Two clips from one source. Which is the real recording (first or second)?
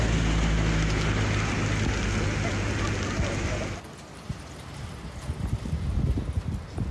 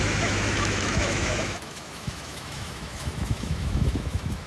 first